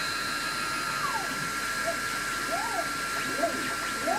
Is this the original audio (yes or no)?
yes